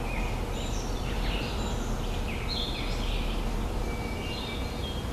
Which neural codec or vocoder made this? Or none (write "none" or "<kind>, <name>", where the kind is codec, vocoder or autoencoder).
none